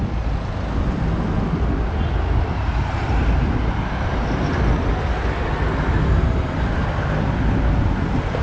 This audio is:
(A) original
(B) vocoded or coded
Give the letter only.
A